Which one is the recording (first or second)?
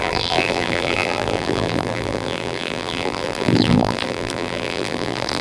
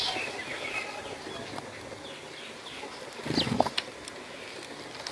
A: second